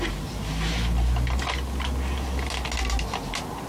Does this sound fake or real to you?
real